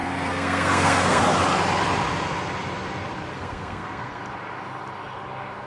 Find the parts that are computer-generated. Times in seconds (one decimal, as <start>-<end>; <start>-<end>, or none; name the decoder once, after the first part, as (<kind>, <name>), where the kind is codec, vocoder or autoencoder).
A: 0.0-1.2 (codec, SNAC); 3.3-4.2